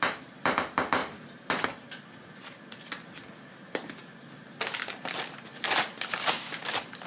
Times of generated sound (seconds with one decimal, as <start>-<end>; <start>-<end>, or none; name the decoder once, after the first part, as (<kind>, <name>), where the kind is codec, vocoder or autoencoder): none